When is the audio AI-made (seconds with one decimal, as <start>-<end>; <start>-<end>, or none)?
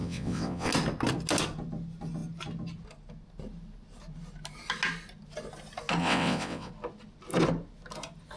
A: 0.0-0.7; 6.0-6.7